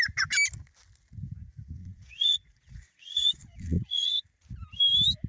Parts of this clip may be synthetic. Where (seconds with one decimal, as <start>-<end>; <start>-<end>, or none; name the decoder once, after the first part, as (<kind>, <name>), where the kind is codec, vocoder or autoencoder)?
1.8-4.1 (vocoder, Vocos)